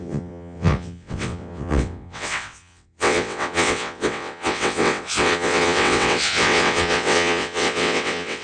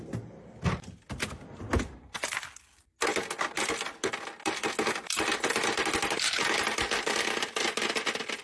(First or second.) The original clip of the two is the second